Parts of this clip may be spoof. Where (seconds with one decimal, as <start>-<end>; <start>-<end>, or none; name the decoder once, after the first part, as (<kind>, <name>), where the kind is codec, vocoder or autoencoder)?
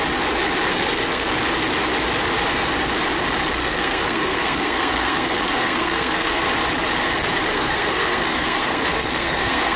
0.7-1.3 (codec, SNAC); 3.6-6.5; 7.5-9.8